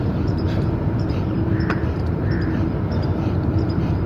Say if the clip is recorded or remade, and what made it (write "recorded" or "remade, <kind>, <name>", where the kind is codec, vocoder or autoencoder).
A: remade, vocoder, BigVGAN v2